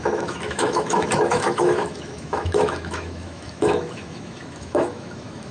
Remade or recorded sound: remade